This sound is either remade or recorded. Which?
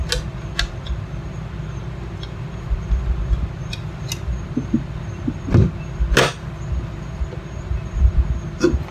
recorded